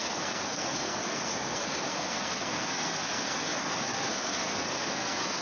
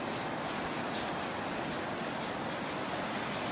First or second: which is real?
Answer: second